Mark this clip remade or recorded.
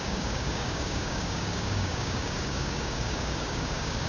remade